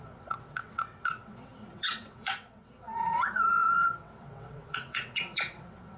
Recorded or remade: remade